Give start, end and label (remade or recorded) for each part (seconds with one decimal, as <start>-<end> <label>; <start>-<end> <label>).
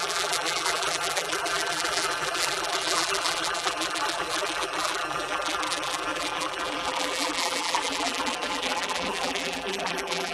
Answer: 0.0-10.3 remade